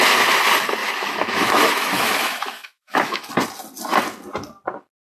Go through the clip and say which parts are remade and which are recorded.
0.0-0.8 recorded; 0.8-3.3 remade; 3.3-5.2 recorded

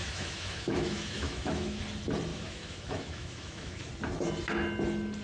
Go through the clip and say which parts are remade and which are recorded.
0.0-1.8 remade; 1.8-2.3 recorded; 2.3-3.9 remade; 3.9-5.2 recorded

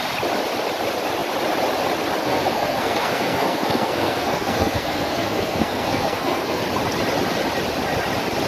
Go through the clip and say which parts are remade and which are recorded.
0.0-2.2 recorded; 2.2-6.6 remade; 6.6-8.5 recorded

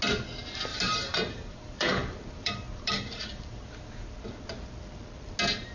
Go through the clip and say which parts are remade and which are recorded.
0.0-0.7 recorded; 0.7-4.1 remade; 4.1-5.7 recorded